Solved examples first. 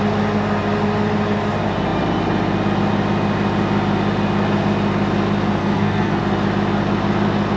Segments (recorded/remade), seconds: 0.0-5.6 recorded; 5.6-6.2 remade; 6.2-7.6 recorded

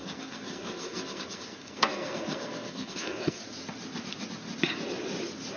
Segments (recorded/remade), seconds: 0.0-3.4 remade; 3.4-5.6 recorded

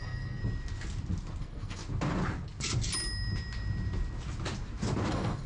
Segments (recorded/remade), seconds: 0.0-0.4 remade; 0.4-1.4 recorded; 1.4-1.8 remade; 1.8-5.1 recorded; 5.1-5.5 remade